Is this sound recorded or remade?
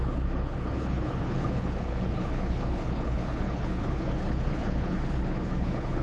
remade